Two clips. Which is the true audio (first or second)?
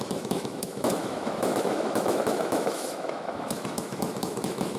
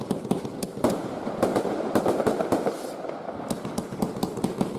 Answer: second